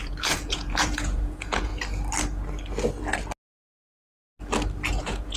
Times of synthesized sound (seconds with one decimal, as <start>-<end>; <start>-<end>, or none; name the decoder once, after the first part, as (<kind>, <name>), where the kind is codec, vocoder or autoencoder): 0.0-1.7 (vocoder, Vocos); 4.9-5.4